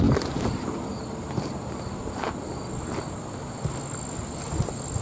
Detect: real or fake real